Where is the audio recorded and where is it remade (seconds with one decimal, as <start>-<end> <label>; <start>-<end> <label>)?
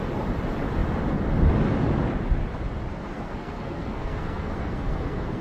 0.0-2.9 recorded; 2.9-5.4 remade